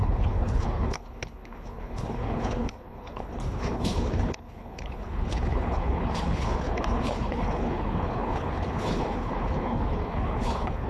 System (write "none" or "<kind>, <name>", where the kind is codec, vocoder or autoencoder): codec, HILCodec